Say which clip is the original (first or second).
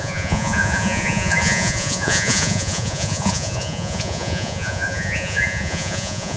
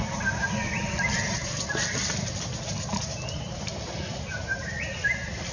second